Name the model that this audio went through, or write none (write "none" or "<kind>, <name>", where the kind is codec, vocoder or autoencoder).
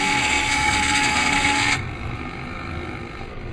codec, SNAC